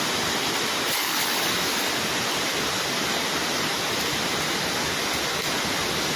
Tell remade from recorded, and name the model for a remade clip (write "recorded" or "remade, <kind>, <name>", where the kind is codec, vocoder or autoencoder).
recorded